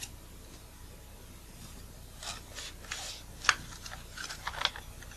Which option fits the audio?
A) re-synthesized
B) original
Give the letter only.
B